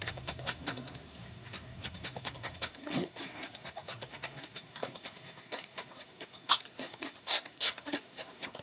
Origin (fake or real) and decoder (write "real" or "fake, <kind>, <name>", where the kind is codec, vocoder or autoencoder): fake, codec, SNAC